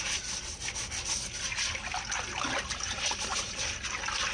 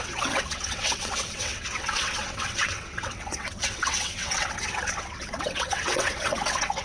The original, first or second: first